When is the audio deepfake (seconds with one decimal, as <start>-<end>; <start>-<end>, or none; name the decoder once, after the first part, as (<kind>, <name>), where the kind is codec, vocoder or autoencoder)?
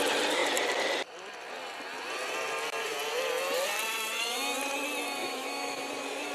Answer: 5.2-5.8 (autoencoder, DAC-VAE)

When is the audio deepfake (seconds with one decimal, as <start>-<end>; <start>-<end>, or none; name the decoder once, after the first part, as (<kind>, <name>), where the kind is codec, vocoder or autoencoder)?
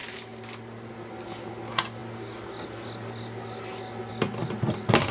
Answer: none